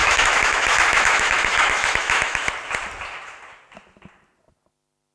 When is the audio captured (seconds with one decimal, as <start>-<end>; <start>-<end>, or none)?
2.5-5.1